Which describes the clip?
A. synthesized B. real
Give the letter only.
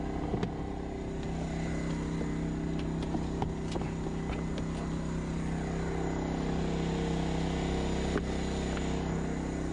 B